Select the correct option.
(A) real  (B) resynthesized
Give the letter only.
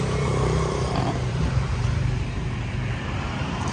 B